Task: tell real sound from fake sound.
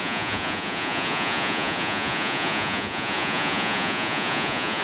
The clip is fake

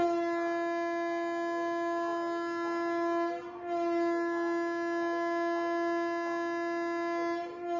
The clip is real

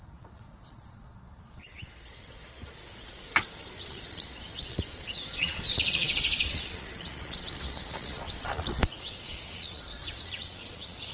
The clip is fake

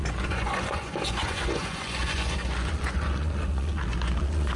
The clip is fake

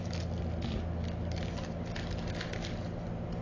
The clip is real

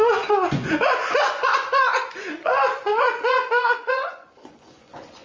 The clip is fake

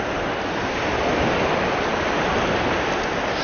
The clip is real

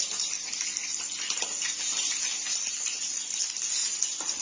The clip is real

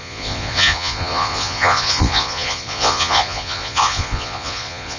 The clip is fake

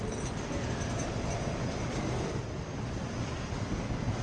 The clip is real